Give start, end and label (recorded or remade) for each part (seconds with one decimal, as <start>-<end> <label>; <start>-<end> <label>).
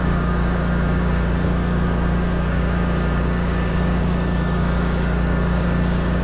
0.0-6.2 remade